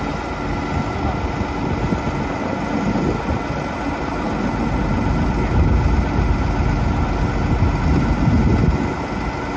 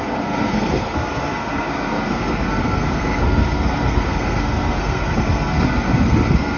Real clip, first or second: first